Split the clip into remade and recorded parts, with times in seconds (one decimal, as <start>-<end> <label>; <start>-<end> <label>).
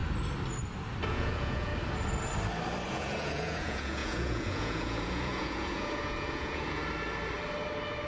0.0-1.1 recorded; 1.1-1.7 remade; 1.7-2.9 recorded; 2.9-6.8 remade; 6.8-8.1 recorded